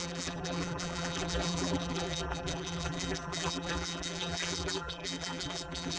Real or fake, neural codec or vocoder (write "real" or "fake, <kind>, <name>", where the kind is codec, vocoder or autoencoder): fake, vocoder, BigVGAN v2